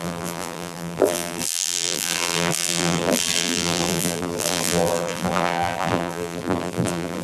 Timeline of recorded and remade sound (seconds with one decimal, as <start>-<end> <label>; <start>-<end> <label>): 0.0-7.2 remade